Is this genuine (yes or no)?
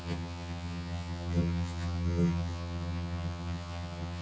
no